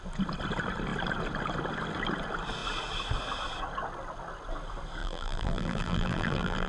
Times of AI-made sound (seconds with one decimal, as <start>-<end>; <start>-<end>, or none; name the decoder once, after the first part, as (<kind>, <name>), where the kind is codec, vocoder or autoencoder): 5.0-6.7 (vocoder, BigVGAN v2)